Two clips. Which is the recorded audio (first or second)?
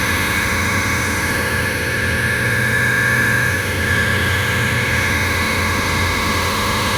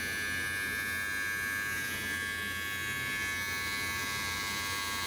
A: second